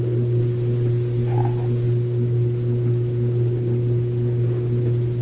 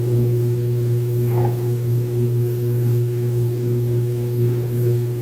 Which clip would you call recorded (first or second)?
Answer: first